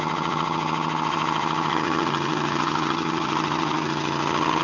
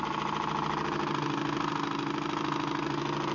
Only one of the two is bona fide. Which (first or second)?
second